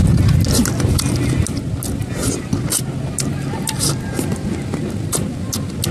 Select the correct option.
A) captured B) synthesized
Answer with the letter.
A